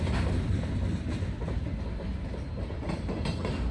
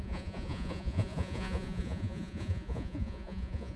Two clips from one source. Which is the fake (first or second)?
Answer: second